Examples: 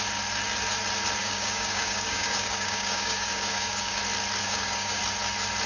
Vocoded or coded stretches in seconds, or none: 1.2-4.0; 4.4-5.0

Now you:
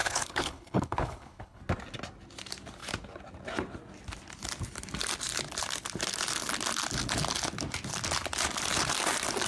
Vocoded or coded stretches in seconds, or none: 0.0-1.6

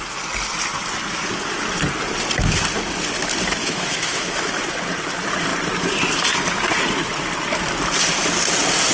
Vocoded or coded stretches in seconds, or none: 3.6-4.5